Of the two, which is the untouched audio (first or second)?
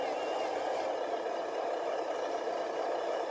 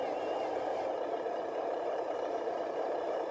first